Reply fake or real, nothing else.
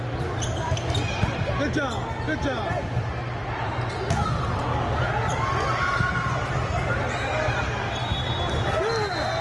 real